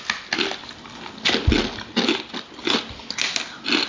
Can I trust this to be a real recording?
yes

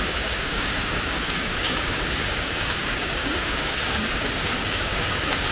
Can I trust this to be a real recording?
no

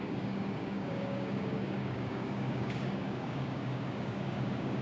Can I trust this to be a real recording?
no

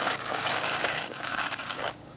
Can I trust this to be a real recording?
no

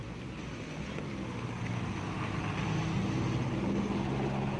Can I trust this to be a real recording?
yes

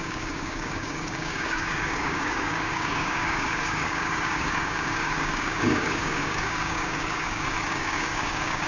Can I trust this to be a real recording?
no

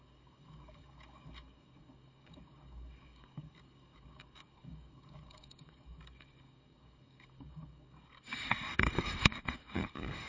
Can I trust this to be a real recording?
no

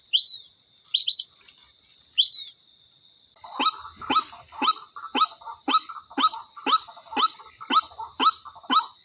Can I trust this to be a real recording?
yes